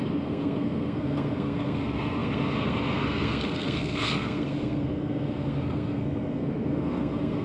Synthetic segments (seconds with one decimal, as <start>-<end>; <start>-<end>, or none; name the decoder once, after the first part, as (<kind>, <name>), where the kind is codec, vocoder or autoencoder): 0.0-7.4 (codec, SNAC)